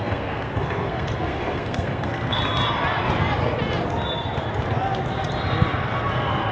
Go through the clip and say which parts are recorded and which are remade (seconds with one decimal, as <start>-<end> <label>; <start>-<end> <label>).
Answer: 0.0-2.4 remade; 2.4-6.5 recorded